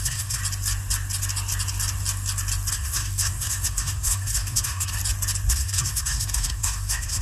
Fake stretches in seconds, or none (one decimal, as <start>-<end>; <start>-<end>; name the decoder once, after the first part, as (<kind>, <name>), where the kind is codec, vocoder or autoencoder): 0.0-0.4 (codec, SNAC); 2.7-5.0; 5.5-7.2